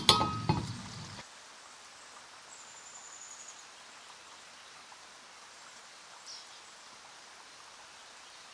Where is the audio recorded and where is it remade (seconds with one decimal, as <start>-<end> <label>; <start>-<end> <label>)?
0.0-8.5 recorded

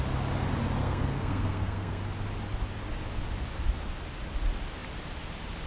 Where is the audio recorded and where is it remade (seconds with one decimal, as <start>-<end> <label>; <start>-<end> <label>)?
0.0-0.8 recorded; 0.8-2.0 remade; 2.0-5.7 recorded

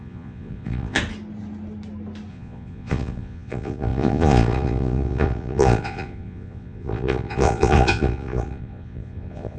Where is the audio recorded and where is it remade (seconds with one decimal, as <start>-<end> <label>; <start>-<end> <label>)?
0.0-1.0 remade; 1.0-2.3 recorded; 2.3-9.6 remade